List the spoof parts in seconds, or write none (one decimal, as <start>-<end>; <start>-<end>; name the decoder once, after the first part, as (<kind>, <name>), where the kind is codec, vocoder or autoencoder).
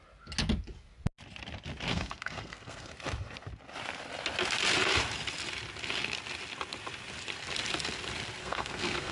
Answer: 1.9-2.9 (codec, SNAC); 8.4-9.1